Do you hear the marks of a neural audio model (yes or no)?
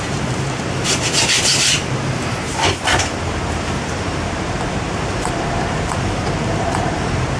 yes